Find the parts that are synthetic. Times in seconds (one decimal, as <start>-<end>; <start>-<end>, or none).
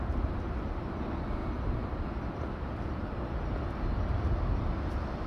none